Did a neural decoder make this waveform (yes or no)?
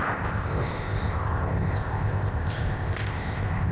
yes